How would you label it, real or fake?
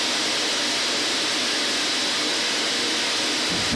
real